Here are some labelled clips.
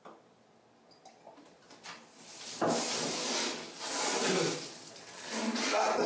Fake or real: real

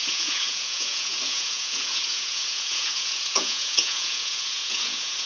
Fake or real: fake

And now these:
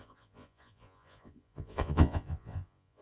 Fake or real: fake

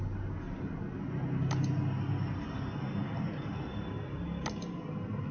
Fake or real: real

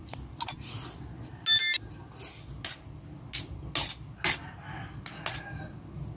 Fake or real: real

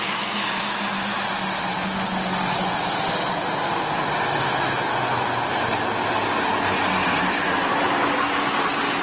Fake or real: real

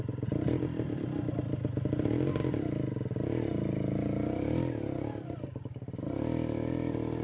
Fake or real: real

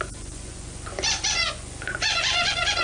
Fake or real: fake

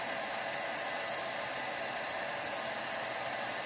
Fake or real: real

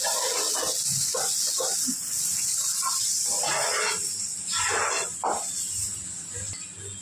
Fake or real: real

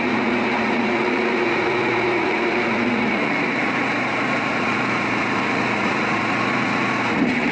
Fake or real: fake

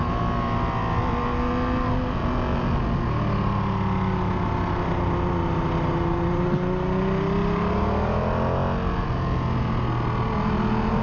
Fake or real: real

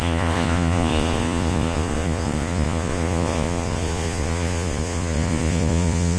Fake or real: fake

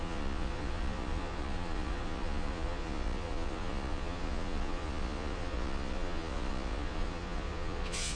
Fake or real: fake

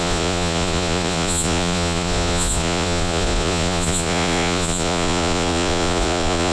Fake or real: fake